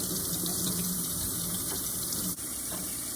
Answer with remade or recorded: remade